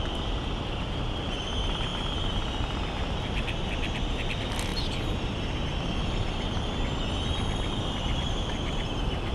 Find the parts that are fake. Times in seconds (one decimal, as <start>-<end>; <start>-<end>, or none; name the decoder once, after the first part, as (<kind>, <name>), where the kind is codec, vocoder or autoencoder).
none